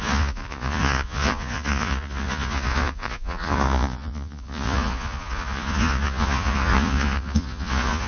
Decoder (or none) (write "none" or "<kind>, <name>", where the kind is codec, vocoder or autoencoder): vocoder, Vocos